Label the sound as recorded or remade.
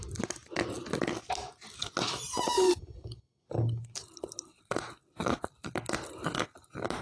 recorded